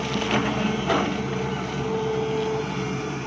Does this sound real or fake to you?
real